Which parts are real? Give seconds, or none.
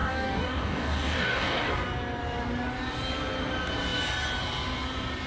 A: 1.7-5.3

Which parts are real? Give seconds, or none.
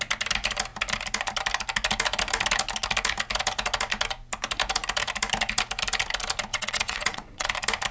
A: 0.0-6.5; 7.5-7.9